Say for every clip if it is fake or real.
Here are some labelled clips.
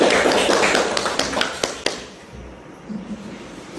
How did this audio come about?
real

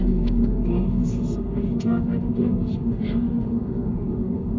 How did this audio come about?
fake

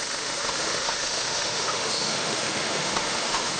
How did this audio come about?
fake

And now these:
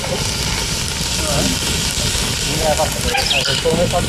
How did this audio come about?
real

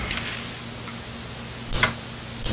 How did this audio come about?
real